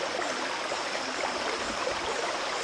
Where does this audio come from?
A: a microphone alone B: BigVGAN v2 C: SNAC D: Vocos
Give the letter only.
A